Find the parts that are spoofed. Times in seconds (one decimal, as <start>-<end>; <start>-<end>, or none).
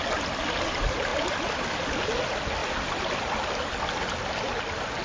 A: none